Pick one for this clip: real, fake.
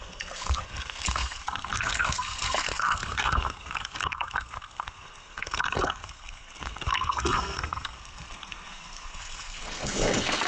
fake